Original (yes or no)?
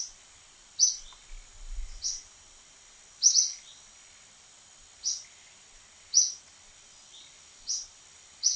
yes